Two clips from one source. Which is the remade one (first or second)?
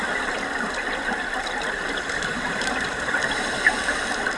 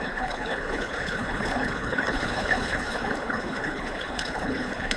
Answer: second